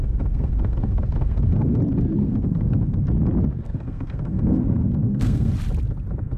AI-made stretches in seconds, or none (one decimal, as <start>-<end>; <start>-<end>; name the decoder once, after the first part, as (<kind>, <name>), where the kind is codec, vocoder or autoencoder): 0.0-1.8 (codec, SNAC); 2.2-3.0; 3.6-5.5